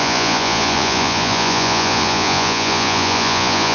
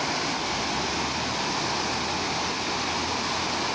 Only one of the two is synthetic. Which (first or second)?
first